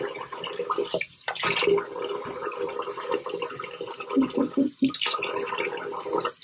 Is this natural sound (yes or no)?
yes